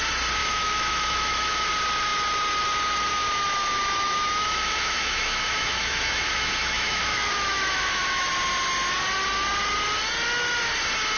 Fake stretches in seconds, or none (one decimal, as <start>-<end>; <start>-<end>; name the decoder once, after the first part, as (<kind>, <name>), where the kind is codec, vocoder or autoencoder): 0.4-1.7 (autoencoder, DAC-VAE); 3.1-8.3